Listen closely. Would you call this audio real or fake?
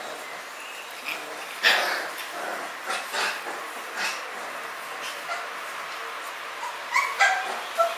real